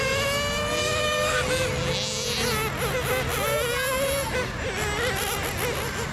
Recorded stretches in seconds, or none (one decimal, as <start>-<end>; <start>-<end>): 0.0-0.8; 1.4-6.1